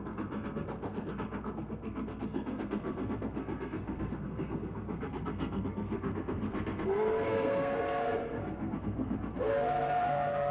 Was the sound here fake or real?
fake